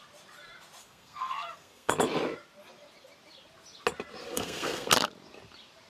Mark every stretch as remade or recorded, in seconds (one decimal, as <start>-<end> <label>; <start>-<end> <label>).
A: 0.0-0.8 recorded; 0.8-1.9 remade; 1.9-4.2 recorded; 4.2-4.9 remade; 4.9-5.9 recorded

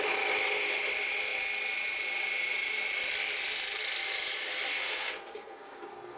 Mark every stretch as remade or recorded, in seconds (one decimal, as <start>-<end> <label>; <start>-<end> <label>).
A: 0.0-4.7 recorded; 4.7-6.2 remade

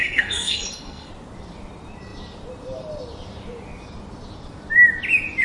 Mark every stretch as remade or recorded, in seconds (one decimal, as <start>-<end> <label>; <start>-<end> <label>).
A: 0.0-1.1 remade; 1.1-5.4 recorded

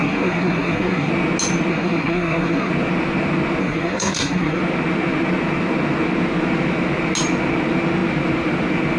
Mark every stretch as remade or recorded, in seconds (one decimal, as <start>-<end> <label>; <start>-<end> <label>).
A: 0.0-1.1 remade; 1.1-1.7 recorded; 1.7-2.7 remade; 2.7-3.6 recorded; 3.6-4.6 remade; 4.6-9.0 recorded

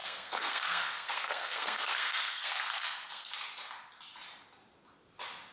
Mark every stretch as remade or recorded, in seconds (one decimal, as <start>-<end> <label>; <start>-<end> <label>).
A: 0.0-3.3 remade; 3.3-5.5 recorded

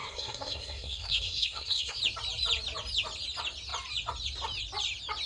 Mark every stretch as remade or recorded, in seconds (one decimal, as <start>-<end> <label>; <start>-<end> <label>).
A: 0.0-2.0 remade; 2.0-5.3 recorded